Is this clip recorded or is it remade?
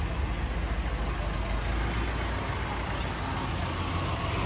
recorded